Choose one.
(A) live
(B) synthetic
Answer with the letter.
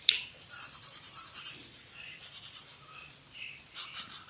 B